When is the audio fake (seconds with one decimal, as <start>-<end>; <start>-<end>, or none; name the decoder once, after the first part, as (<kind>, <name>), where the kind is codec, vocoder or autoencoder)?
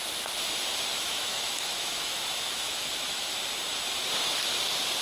0.9-3.3 (autoencoder, DAC-VAE)